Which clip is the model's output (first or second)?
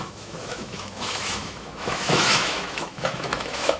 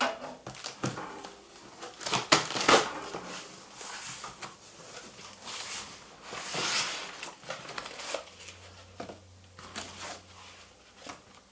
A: first